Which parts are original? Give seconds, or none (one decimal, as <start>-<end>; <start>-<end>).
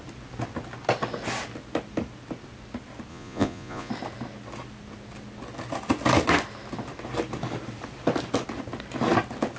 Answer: 0.0-3.1; 3.9-9.6